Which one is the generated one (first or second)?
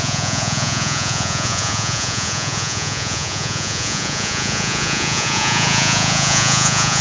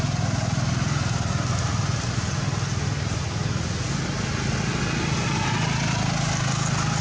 first